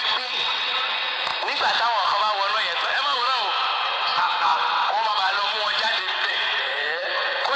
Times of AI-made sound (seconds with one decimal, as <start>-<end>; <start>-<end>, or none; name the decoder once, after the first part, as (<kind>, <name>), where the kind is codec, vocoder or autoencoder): 0.0-1.3 (vocoder, WaveNeXt); 3.8-7.6